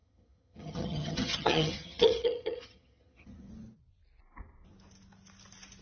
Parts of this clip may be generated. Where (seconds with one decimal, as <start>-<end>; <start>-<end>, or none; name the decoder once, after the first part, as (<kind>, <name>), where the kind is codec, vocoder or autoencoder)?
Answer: 0.0-3.5 (vocoder, HiFi-GAN)